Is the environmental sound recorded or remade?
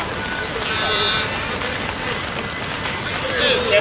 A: recorded